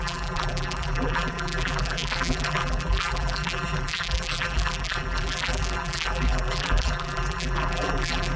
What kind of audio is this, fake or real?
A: fake